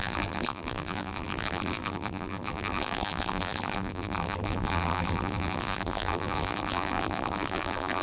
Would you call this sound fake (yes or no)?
yes